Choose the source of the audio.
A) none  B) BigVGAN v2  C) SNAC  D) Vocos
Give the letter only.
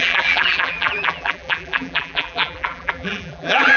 B